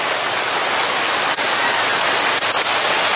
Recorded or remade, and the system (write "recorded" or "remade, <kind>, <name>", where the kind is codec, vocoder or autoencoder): recorded